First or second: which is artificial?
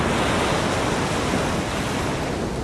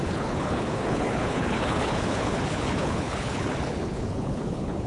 second